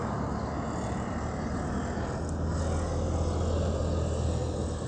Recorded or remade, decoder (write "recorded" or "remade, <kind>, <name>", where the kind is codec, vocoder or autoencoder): recorded